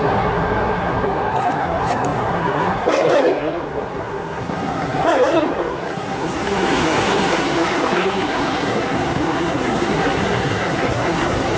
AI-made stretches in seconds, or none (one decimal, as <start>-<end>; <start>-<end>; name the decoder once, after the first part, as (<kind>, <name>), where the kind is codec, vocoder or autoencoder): 0.0-11.6 (codec, SNAC)